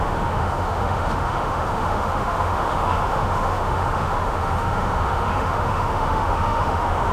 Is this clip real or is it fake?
fake